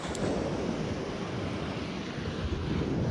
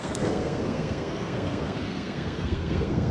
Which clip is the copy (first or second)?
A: second